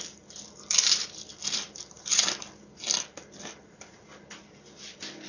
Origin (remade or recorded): remade